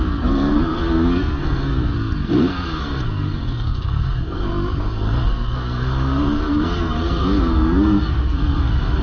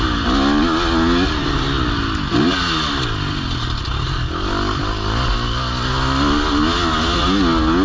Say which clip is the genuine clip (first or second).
second